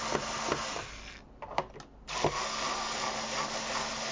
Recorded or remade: recorded